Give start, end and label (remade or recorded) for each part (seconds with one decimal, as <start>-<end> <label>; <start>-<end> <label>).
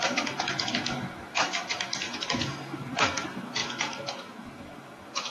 0.0-5.3 remade